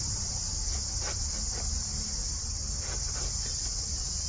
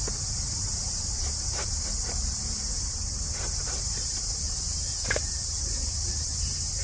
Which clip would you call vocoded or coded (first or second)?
second